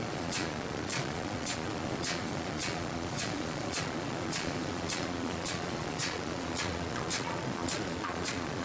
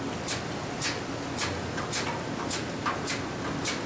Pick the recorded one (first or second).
second